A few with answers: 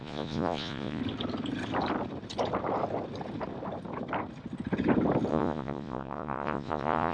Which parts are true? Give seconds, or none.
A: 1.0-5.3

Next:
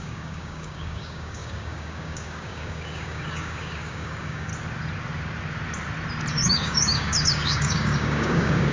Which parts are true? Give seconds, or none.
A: 4.5-6.3

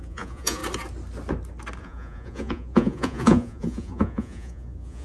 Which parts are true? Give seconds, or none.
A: 0.6-1.8

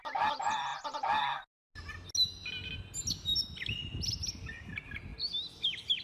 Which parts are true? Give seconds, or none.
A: 0.7-4.3; 5.1-6.0

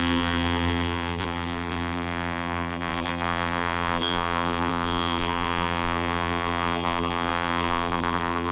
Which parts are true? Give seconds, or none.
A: none

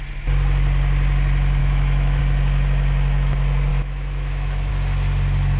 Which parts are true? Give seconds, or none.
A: 0.0-1.6; 2.2-3.7; 4.7-5.6

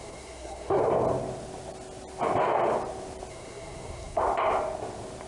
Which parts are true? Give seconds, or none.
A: 0.8-3.3; 4.2-5.3

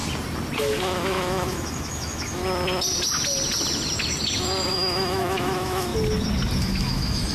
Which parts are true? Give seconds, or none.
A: 0.0-0.6; 2.4-4.7; 5.9-6.6